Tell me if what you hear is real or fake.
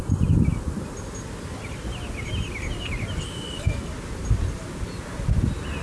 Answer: real